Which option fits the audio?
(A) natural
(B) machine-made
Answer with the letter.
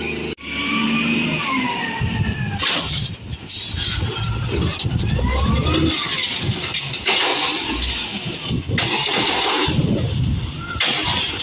A